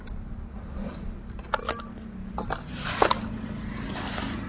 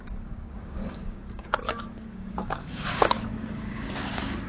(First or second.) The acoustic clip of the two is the first